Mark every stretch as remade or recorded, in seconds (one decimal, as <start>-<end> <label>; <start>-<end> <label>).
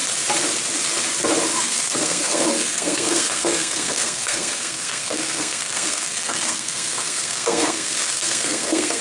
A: 0.0-1.6 recorded; 1.6-9.0 remade